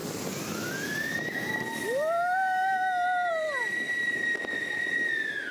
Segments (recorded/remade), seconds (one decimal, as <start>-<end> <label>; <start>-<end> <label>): 0.0-5.5 recorded